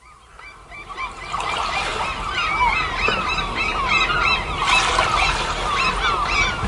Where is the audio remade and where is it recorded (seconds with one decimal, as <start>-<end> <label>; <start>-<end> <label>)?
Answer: 0.0-6.7 recorded